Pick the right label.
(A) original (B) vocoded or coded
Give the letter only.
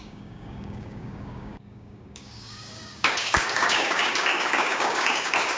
B